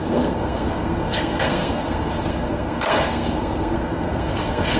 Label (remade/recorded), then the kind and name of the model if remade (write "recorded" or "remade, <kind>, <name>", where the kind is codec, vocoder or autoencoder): remade, codec, SNAC